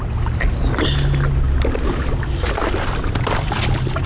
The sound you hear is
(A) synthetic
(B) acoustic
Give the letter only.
B